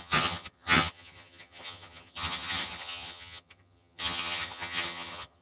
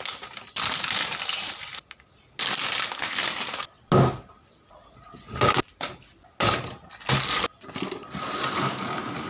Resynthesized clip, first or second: first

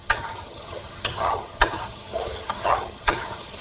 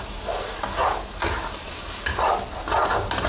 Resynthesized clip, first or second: first